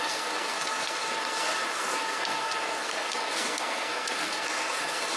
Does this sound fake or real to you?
fake